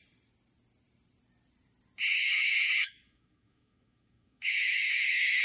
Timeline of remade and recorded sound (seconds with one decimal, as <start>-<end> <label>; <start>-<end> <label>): 0.0-2.1 recorded; 2.1-5.4 remade